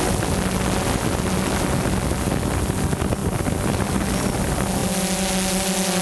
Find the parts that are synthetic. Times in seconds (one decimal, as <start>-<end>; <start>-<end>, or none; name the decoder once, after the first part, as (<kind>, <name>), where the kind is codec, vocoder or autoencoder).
none